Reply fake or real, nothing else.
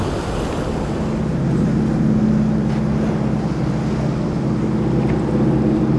real